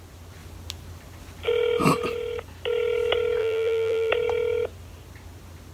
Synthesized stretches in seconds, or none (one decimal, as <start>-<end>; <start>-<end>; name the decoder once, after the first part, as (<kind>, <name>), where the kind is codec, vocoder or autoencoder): 3.4-4.1 (vocoder, BigVGAN v2)